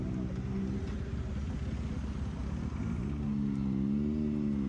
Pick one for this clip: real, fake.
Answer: real